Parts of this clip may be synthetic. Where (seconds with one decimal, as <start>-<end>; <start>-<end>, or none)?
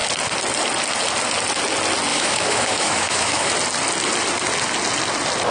2.1-3.5